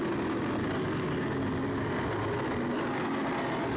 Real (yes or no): yes